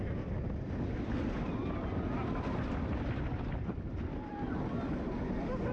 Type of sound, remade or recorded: recorded